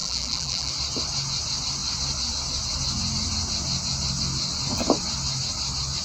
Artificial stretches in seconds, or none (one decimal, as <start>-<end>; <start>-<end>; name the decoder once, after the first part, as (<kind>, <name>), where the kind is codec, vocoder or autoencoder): 0.0-0.7 (vocoder, BigVGAN v2)